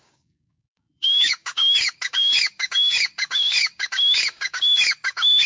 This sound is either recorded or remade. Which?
remade